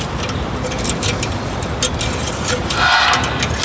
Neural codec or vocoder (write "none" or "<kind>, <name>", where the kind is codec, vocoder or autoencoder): none